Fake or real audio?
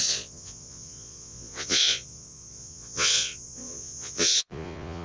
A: fake